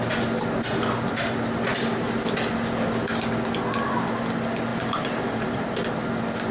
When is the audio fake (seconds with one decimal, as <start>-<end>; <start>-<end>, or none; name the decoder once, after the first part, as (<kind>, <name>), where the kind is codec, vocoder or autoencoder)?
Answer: 1.7-2.2 (vocoder, BigVGAN v2); 4.7-6.1